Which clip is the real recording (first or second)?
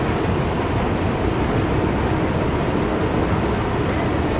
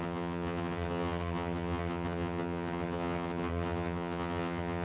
first